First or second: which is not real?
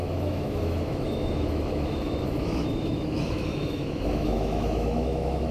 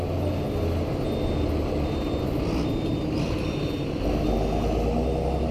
first